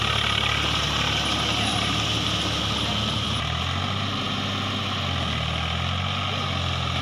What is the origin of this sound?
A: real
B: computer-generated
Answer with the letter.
A